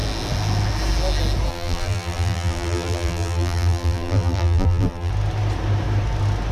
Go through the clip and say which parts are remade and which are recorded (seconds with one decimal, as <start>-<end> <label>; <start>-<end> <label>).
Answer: 0.0-1.5 recorded; 1.5-5.1 remade; 5.1-6.5 recorded